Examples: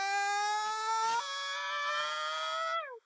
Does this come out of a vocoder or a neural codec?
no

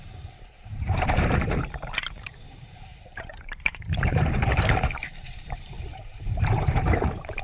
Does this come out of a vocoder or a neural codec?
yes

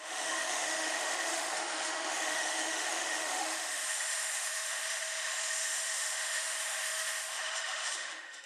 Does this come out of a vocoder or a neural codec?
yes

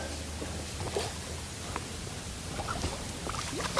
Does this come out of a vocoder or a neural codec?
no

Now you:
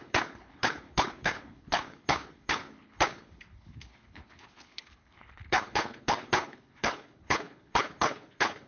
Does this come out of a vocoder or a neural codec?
yes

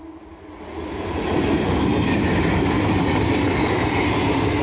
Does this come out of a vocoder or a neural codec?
no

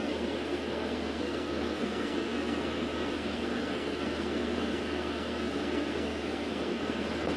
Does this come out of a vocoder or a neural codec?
yes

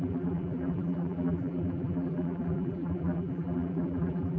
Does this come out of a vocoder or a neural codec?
yes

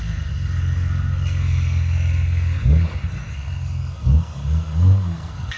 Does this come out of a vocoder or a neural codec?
yes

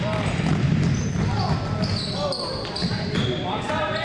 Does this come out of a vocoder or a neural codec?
no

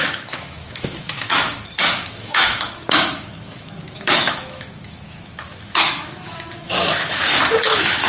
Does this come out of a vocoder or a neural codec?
yes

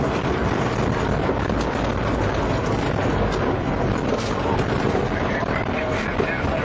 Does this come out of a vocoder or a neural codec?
no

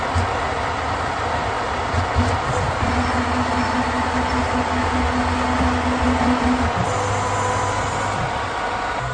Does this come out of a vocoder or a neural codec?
no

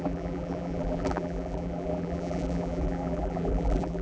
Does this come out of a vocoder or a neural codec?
yes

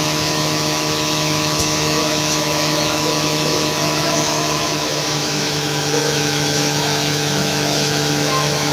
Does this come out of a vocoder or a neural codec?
yes